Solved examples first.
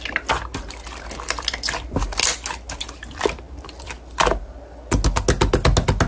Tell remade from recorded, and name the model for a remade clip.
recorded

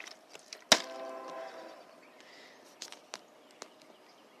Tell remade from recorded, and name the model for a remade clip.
recorded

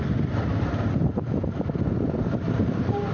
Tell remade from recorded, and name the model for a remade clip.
recorded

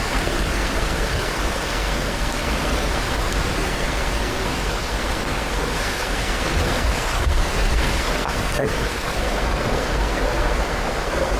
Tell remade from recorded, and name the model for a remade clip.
remade, codec, SNAC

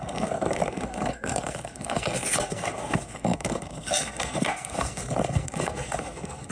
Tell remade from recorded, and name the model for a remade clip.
remade, codec, SNAC